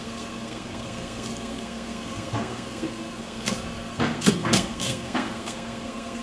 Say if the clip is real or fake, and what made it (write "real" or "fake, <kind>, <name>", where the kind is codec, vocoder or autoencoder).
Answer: fake, codec, SNAC